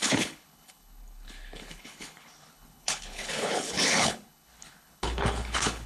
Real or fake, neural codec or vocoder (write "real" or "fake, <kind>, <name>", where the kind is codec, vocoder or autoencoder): fake, codec, HILCodec